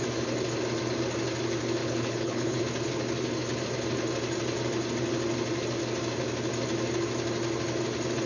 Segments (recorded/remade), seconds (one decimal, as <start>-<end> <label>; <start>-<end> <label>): 0.0-1.8 recorded; 1.8-2.6 remade; 2.6-8.3 recorded